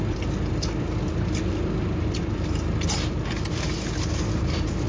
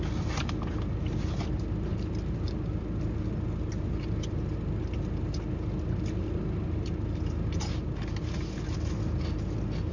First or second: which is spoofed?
first